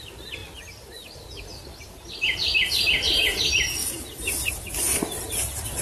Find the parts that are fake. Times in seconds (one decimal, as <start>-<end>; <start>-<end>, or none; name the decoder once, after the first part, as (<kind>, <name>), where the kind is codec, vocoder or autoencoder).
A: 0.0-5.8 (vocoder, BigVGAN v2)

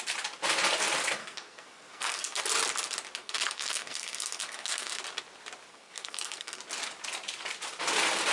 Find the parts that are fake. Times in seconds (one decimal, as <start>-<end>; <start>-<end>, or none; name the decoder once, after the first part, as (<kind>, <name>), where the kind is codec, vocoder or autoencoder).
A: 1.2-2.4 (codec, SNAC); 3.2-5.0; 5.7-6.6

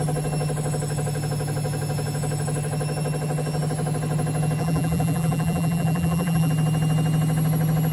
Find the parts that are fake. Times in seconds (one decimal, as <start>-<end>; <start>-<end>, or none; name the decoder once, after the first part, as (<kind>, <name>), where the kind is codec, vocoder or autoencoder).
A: 4.6-6.5 (vocoder, BigVGAN v2)

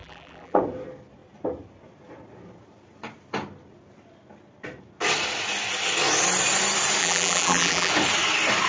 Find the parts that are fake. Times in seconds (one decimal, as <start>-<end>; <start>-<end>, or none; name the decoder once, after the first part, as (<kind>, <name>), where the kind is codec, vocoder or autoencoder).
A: 0.0-0.6 (vocoder, BigVGAN v2); 7.0-7.9

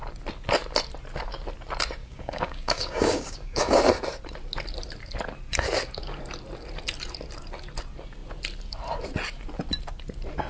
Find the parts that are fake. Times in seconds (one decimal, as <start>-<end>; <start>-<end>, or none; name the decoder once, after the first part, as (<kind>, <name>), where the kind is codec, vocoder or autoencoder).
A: 2.0-3.8 (codec, DAC)

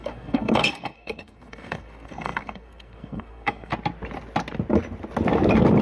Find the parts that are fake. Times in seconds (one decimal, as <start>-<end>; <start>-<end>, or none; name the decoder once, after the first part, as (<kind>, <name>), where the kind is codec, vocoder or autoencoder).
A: 0.0-3.7 (codec, SNAC)

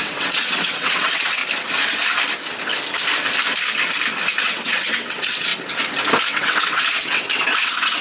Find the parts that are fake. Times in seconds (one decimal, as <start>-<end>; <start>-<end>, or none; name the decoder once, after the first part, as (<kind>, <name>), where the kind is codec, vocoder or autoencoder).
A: 0.0-1.4 (vocoder, WaveNeXt); 4.4-5.5; 6.3-8.0

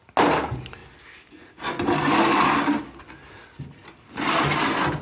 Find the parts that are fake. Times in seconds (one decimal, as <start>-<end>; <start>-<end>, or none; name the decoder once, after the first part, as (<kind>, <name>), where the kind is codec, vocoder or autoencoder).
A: none